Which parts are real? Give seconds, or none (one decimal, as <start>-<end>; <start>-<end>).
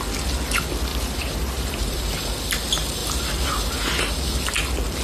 0.0-0.9; 2.4-5.0